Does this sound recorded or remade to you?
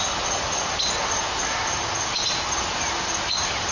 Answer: recorded